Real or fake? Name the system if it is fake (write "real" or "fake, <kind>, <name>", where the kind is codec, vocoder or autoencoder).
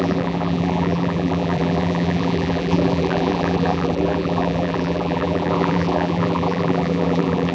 fake, vocoder, BigVGAN v2